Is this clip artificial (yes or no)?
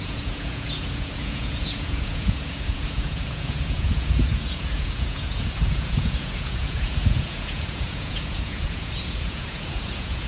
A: yes